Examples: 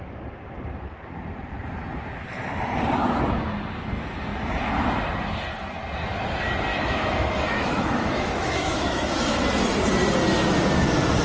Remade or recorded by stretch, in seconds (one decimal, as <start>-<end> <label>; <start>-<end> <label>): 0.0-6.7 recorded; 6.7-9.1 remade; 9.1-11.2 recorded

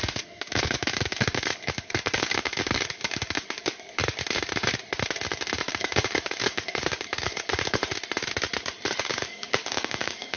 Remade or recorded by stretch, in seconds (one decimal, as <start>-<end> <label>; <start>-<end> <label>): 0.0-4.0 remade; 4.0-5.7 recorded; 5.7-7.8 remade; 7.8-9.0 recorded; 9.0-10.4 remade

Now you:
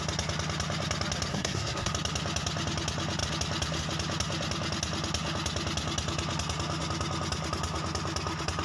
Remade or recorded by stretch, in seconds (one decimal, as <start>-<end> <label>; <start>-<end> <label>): 0.0-1.3 recorded; 1.3-1.9 remade; 1.9-8.6 recorded

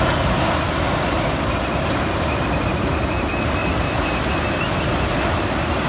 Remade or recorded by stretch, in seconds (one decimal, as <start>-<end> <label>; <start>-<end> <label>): 0.0-5.9 recorded

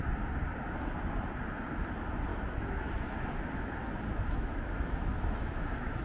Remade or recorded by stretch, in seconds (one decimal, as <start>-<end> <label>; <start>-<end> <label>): 0.0-2.3 recorded; 2.3-3.3 remade; 3.3-4.1 recorded; 4.1-6.0 remade

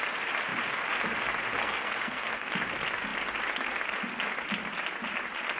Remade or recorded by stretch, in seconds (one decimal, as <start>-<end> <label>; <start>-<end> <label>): 0.0-1.6 recorded; 1.6-2.5 remade; 2.5-5.6 recorded